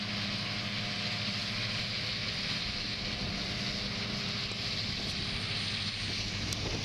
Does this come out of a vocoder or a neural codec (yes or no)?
no